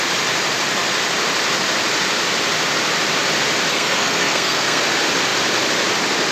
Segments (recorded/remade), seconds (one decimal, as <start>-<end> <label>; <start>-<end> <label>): 0.0-3.7 recorded; 3.7-4.8 remade; 4.8-6.3 recorded